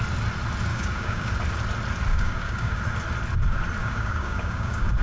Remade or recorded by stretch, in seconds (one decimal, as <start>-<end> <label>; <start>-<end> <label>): 0.0-0.7 recorded; 0.7-1.3 remade; 1.3-2.1 recorded; 2.1-2.8 remade; 2.8-3.8 recorded; 3.8-5.0 remade